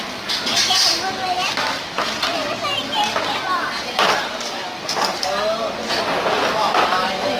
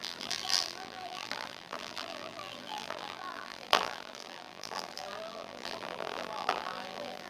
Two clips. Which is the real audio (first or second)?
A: first